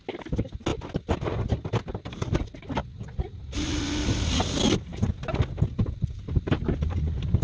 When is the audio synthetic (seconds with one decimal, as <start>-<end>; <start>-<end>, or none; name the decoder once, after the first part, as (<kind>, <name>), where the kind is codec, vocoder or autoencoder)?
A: none

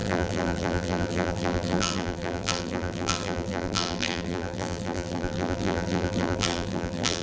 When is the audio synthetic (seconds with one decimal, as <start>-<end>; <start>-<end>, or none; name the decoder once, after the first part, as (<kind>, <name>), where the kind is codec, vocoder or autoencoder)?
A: 0.0-7.2 (vocoder, BigVGAN v2)

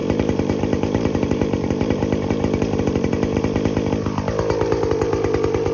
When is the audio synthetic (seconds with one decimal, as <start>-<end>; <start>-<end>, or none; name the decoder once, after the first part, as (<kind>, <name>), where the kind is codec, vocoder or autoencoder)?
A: 0.0-3.4 (vocoder, BigVGAN v2)

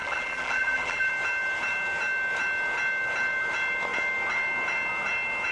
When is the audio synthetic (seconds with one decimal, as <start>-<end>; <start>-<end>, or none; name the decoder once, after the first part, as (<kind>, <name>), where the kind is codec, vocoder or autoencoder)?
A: 0.0-1.1 (vocoder, BigVGAN v2)

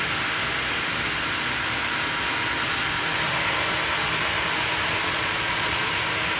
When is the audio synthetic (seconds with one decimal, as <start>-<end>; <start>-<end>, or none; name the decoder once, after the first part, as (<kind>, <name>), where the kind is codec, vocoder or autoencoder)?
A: 5.0-5.9 (vocoder, Vocos)

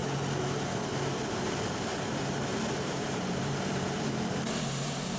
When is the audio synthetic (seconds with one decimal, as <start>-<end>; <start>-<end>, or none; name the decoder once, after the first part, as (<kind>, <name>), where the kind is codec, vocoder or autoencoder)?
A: 2.9-5.2 (vocoder, BigVGAN v2)

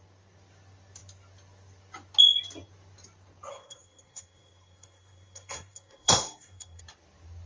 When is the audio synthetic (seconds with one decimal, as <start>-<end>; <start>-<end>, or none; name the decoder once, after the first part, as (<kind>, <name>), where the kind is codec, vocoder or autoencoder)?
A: 3.5-6.8 (codec, SNAC)